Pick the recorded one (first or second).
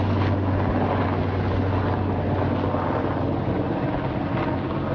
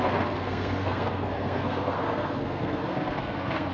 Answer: first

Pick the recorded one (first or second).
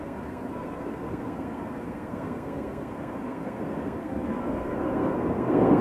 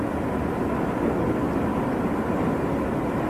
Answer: second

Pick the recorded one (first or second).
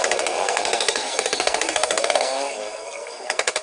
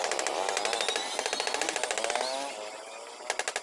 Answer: second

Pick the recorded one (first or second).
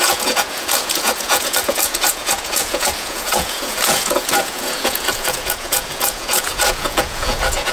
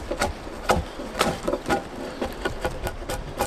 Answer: second